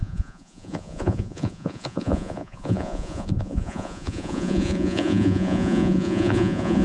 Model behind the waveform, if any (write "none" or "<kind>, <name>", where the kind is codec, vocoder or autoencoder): vocoder, Vocos